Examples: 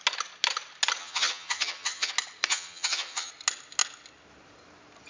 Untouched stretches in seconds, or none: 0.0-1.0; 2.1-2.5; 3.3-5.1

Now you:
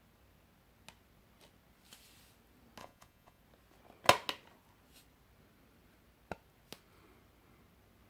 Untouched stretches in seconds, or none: 0.0-2.8; 3.4-8.1